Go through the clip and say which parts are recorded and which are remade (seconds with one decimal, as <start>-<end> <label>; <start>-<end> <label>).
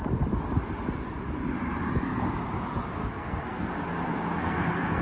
0.0-3.0 recorded; 3.0-3.7 remade; 3.7-4.4 recorded; 4.4-5.0 remade